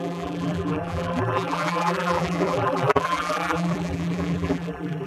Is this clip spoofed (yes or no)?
yes